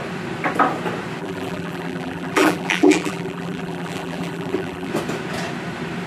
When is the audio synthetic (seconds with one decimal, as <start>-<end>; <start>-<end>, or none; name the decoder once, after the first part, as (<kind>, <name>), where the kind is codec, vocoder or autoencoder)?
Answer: 1.2-4.9 (vocoder, BigVGAN v2)